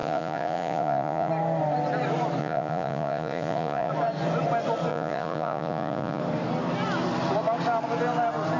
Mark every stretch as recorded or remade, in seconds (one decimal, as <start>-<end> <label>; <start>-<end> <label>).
0.0-1.3 remade; 1.3-2.4 recorded; 2.4-3.9 remade; 3.9-4.9 recorded; 4.9-6.2 remade; 6.2-8.6 recorded